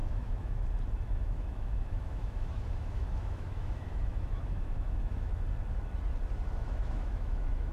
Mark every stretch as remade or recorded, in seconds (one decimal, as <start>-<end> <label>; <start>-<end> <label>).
0.0-0.7 remade; 0.7-1.2 recorded; 1.2-5.4 remade; 5.4-6.6 recorded; 6.6-7.7 remade